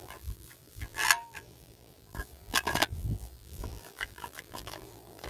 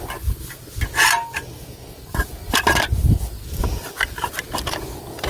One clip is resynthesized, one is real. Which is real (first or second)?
second